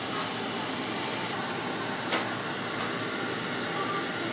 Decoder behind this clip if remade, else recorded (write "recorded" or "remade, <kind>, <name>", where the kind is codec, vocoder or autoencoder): recorded